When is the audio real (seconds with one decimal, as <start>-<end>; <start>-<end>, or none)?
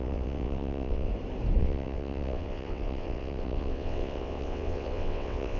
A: 1.1-1.6